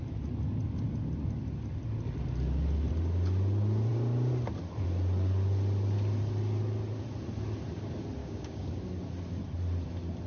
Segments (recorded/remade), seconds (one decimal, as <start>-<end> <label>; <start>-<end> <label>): 0.0-8.2 recorded; 8.2-8.7 remade; 8.7-10.3 recorded